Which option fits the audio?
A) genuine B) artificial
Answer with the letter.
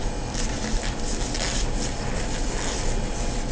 A